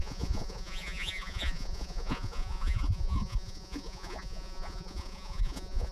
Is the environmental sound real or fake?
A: fake